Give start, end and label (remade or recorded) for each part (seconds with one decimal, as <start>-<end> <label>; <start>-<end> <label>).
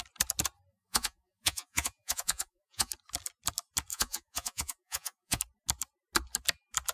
0.0-0.7 recorded; 0.7-2.9 remade; 2.9-3.9 recorded; 3.9-5.4 remade; 5.4-6.9 recorded